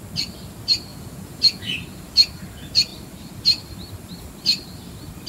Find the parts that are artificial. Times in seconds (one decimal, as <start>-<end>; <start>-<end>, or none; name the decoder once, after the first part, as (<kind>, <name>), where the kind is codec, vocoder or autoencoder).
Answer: 0.9-1.8 (vocoder, Vocos)